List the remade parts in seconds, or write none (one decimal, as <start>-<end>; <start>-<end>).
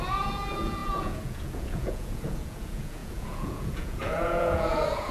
0.0-5.1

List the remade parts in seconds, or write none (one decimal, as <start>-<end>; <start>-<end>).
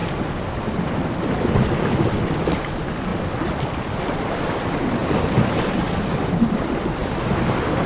none